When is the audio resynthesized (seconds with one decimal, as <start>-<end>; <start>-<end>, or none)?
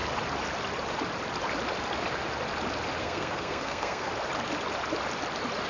3.0-4.1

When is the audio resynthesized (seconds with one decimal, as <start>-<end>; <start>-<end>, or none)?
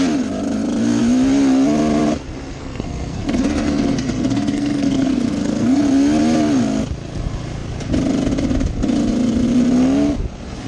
2.5-5.8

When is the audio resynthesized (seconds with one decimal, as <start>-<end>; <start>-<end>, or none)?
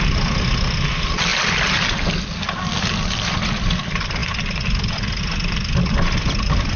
none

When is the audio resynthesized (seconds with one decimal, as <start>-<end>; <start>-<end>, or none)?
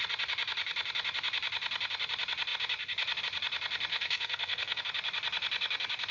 3.9-4.8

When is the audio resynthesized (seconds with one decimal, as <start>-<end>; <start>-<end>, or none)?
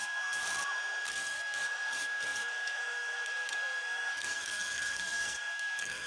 0.0-0.4; 1.1-6.1